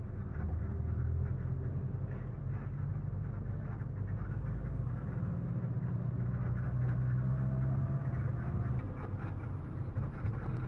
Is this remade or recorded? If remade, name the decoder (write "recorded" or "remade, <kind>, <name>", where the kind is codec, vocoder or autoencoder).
recorded